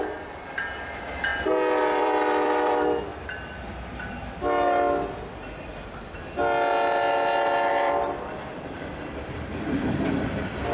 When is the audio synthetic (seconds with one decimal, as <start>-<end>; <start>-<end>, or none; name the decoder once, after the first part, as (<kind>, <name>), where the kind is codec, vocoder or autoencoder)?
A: 0.0-1.3 (vocoder, BigVGAN v2); 1.8-3.1; 7.7-10.7